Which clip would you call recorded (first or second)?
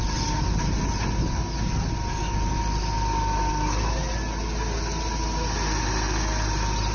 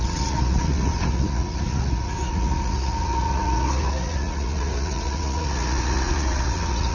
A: first